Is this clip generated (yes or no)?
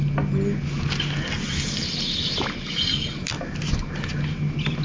no